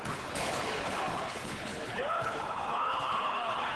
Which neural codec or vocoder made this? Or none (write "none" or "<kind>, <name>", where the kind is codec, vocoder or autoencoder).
codec, HILCodec